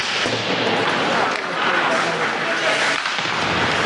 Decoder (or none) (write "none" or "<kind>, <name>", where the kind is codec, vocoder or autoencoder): none